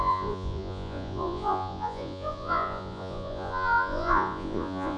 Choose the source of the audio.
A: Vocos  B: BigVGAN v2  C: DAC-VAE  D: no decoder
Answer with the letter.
A